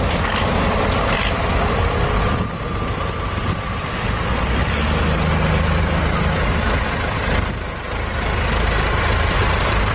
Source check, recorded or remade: recorded